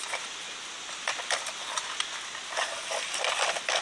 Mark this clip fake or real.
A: real